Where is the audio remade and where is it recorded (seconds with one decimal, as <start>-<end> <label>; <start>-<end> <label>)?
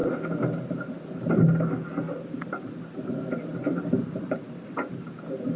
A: 0.0-3.5 recorded; 3.5-4.7 remade; 4.7-5.6 recorded